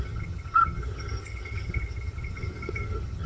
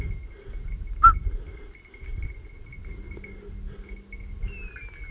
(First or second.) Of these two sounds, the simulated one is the first